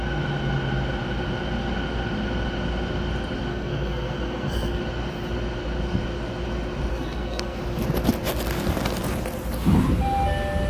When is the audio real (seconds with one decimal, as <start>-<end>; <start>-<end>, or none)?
0.0-3.5; 4.8-6.9; 7.6-10.7